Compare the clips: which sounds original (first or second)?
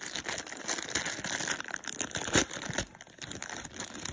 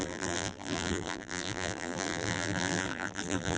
first